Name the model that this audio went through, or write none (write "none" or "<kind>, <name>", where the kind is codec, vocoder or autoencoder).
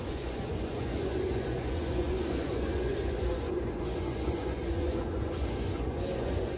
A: vocoder, Vocos